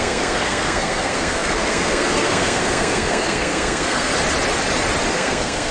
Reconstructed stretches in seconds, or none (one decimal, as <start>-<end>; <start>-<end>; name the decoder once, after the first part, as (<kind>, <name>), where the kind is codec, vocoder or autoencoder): 0.0-4.1 (codec, SNAC); 5.1-5.7